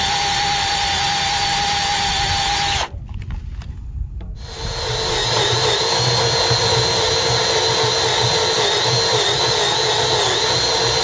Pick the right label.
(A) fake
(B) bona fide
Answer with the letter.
B